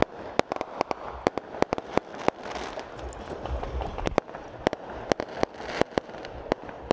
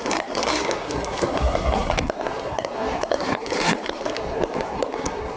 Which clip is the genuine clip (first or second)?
first